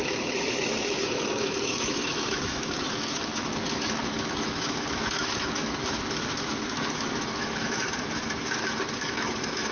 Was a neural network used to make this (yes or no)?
yes